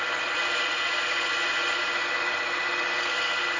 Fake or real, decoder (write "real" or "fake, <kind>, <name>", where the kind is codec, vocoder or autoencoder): real